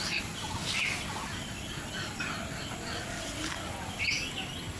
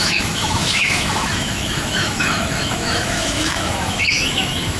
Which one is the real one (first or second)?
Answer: first